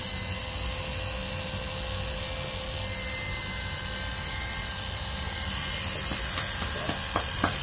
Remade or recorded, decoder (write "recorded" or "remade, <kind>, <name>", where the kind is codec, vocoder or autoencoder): recorded